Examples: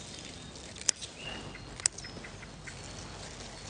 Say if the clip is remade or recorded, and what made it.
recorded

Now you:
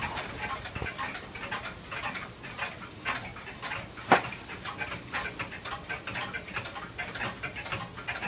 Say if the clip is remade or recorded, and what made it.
recorded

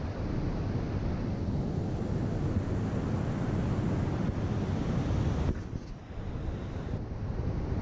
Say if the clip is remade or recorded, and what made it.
recorded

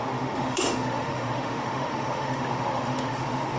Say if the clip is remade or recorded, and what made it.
remade, autoencoder, DAC-VAE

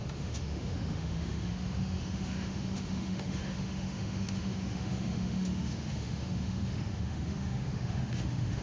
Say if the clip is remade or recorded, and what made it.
remade, autoencoder, DAC-VAE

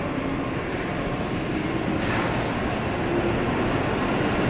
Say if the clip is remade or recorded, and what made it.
recorded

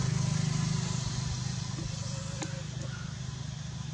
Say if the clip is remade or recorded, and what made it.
recorded